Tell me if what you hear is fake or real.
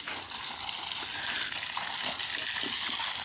real